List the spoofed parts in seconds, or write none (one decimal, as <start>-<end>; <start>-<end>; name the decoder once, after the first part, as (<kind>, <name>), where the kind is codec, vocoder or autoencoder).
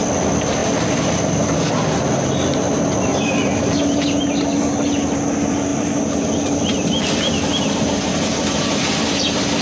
5.7-7.8 (vocoder, BigVGAN v2)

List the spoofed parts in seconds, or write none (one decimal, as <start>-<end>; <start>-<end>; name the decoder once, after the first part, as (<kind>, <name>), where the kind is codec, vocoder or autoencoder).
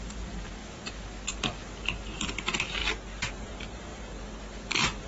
0.0-0.6 (vocoder, BigVGAN v2); 1.3-2.8; 3.3-5.1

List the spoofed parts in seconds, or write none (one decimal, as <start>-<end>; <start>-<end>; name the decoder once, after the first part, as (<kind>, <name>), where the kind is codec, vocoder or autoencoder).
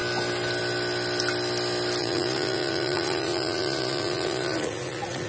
2.0-5.3 (vocoder, Vocos)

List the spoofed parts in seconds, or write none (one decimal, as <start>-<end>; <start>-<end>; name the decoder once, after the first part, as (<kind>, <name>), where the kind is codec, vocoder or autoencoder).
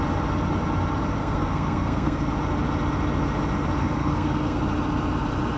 1.2-2.3 (codec, SNAC); 3.8-4.6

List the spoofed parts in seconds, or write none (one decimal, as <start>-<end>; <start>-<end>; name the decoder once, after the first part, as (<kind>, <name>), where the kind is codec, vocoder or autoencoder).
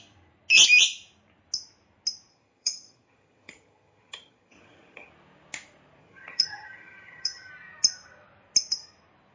2.3-5.1 (vocoder, HiFi-GAN); 6.0-7.5